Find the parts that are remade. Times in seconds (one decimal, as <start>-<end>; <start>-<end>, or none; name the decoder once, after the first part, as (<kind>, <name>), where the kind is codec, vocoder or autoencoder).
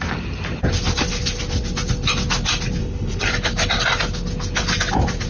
2.8-3.3 (codec, HILCodec)